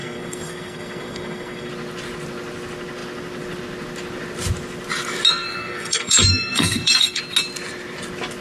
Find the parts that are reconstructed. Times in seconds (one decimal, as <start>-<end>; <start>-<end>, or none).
0.0-1.7; 5.3-7.2